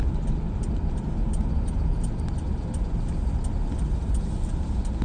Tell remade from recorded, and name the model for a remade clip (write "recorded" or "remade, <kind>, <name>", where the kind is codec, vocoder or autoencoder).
recorded